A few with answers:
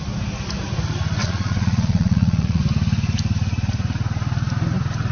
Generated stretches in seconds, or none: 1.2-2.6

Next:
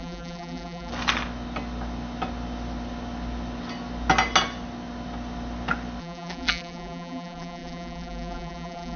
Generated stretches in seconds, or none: 0.0-0.9; 6.0-9.0

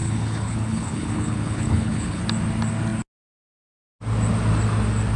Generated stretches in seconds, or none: 0.0-2.2

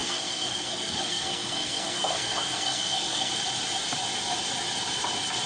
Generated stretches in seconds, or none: 0.0-3.3

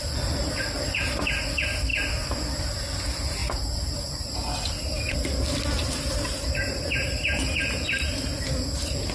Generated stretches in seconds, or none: 0.0-1.1; 3.4-4.3; 5.8-8.4

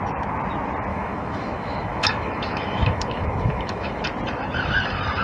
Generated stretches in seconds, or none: 0.9-4.0

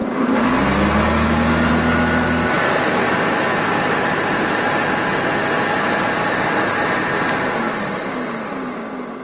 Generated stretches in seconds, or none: none

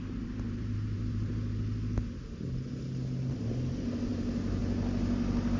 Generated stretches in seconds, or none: 0.0-1.3; 4.1-4.6